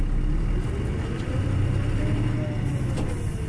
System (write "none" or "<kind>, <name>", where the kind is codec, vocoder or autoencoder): none